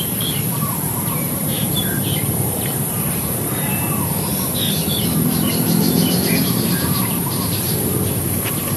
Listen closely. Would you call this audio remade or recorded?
remade